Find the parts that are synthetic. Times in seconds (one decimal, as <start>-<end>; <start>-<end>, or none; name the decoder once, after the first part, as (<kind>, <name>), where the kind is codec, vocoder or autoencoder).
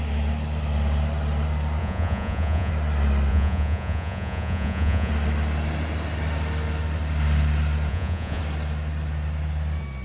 1.8-2.7 (vocoder, Vocos); 3.3-5.1; 7.9-8.4